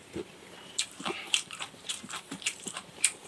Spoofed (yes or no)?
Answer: yes